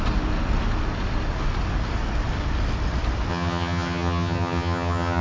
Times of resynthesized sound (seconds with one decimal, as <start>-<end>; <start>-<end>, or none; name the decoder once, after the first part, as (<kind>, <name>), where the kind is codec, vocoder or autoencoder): 3.3-5.2 (vocoder, HiFi-GAN)